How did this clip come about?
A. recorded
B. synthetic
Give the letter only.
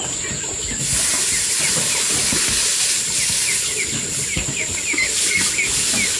A